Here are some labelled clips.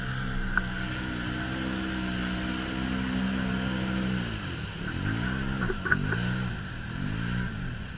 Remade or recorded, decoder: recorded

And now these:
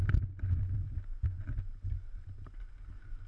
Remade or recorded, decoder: recorded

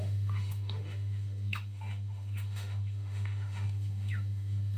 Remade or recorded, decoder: remade, autoencoder, DAC-VAE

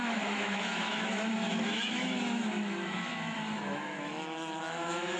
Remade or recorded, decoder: remade, autoencoder, DAC-VAE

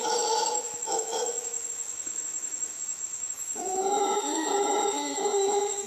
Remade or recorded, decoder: remade, autoencoder, DAC-VAE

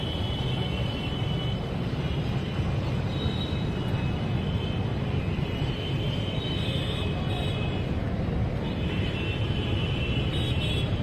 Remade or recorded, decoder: recorded